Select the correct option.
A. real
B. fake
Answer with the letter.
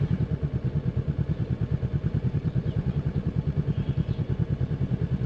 B